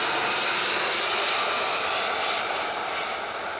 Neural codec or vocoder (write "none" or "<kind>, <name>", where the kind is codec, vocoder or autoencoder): none